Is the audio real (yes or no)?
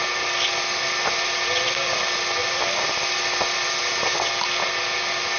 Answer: yes